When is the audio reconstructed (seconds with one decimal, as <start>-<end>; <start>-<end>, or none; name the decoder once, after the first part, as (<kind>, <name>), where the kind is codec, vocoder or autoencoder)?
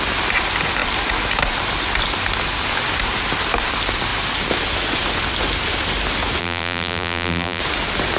6.4-7.6 (vocoder, BigVGAN v2)